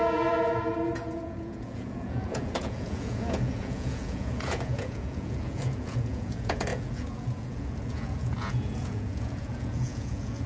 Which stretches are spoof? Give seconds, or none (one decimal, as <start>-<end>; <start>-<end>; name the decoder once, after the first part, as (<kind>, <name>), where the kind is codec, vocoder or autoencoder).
0.0-10.5 (vocoder, Vocos)